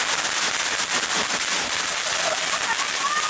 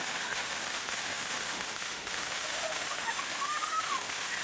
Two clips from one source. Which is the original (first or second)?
first